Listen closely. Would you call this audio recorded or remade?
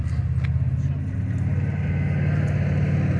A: recorded